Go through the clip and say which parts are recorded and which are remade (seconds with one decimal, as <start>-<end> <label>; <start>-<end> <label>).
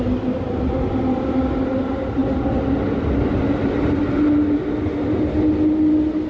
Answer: 0.0-6.3 recorded